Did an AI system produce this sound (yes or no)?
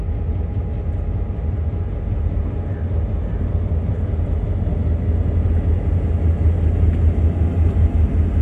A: no